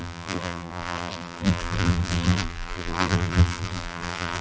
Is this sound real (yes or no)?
no